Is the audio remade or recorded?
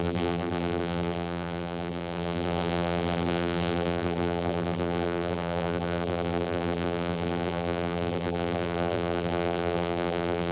remade